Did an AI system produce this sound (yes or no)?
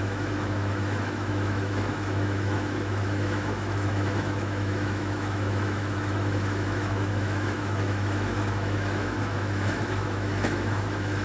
yes